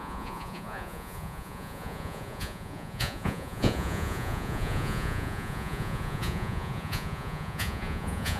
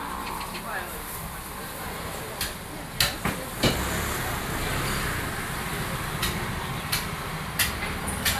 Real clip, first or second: second